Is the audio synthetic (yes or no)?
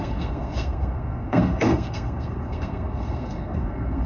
yes